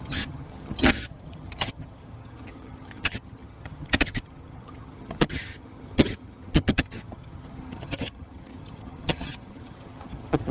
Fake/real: fake